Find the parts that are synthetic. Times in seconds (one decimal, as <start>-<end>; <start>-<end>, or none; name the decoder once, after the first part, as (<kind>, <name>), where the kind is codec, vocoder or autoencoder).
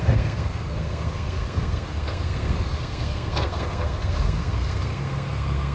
0.0-5.7 (codec, SNAC)